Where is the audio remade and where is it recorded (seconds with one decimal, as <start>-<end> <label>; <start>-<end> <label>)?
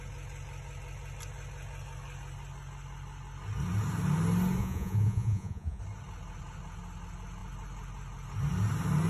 0.0-4.6 recorded; 4.6-5.8 remade; 5.8-9.1 recorded